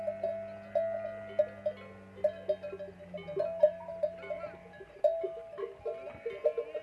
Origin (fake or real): real